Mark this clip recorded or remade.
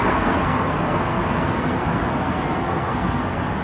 remade